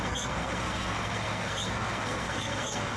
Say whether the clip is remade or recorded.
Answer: remade